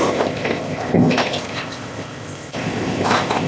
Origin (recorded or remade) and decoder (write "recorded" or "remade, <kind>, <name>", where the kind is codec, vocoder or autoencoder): remade, codec, ZipCodec